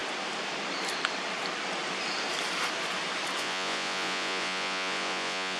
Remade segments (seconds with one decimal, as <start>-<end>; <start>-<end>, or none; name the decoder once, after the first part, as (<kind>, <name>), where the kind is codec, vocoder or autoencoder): 3.4-5.6 (vocoder, Vocos)

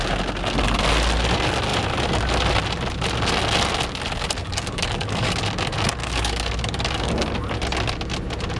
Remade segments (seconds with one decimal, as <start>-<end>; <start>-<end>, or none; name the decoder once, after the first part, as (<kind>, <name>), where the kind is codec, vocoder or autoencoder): 4.4-5.4 (codec, DAC); 6.0-7.1

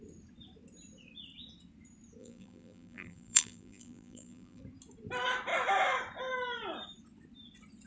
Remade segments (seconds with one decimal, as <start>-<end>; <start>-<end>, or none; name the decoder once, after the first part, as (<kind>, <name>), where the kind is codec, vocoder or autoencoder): 2.2-4.6 (vocoder, BigVGAN v2)